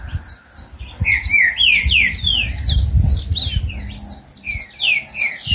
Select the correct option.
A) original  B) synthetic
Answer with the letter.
A